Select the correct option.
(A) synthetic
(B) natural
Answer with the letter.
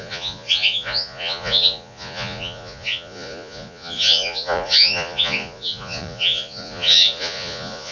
A